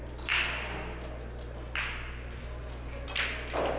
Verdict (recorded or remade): recorded